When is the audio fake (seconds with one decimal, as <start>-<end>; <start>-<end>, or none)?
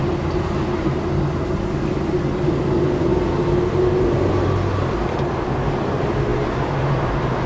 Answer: none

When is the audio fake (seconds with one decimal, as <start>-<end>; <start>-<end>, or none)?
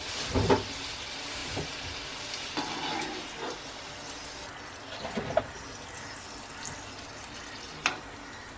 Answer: none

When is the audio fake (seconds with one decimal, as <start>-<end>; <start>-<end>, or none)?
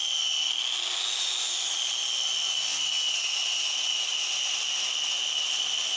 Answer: none